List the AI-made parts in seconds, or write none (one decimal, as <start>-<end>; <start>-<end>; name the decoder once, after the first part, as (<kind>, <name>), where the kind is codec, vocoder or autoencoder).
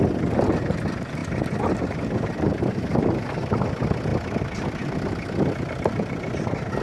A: none